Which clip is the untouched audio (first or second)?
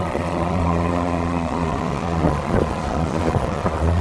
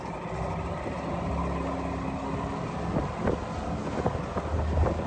second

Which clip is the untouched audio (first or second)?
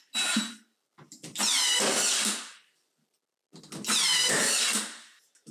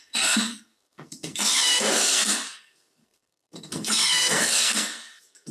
first